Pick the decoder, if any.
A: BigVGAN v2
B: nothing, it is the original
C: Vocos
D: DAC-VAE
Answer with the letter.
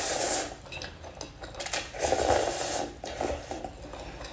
B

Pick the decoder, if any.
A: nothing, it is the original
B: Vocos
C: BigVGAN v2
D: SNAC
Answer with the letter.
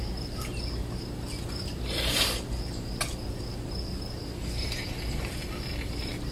A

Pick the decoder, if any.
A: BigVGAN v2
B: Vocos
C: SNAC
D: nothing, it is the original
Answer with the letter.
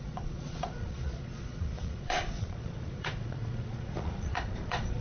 B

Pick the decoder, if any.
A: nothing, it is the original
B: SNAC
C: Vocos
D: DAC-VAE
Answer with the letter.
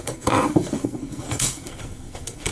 B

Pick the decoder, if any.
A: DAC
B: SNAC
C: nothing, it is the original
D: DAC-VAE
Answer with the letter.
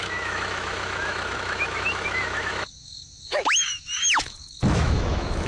D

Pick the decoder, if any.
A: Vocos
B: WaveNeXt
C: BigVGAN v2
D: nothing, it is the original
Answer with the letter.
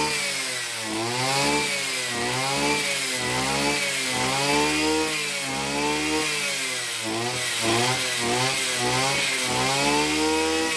D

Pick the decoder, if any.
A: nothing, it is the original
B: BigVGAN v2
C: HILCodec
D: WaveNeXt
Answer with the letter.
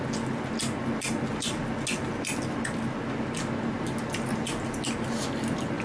A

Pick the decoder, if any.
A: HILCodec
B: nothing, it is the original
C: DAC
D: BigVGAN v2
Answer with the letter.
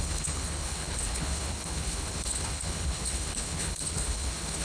A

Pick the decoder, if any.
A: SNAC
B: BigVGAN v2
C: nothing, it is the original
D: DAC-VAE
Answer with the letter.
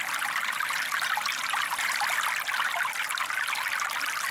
C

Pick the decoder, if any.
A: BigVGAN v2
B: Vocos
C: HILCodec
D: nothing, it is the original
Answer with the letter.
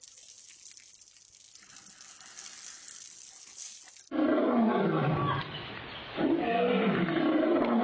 D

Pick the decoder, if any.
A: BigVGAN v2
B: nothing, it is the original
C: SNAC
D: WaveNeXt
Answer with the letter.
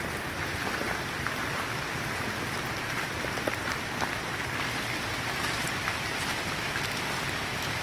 B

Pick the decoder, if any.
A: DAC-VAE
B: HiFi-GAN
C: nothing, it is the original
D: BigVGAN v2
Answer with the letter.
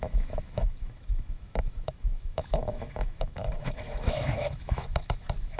A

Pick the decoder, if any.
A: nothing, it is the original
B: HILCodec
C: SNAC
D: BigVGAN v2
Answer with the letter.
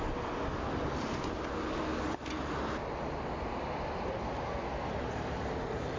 A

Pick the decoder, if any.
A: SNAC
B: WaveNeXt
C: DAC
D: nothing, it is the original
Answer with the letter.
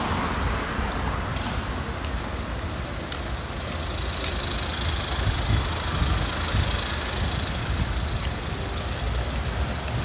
D